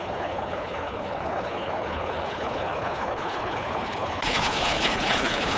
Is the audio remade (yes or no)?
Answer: yes